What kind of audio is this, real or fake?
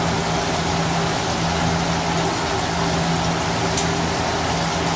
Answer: real